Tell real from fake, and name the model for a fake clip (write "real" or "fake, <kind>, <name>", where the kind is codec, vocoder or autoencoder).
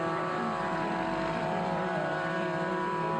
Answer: fake, vocoder, BigVGAN v2